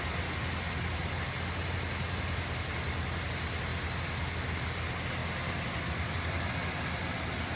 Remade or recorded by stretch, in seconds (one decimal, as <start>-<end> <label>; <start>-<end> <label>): 0.0-7.6 recorded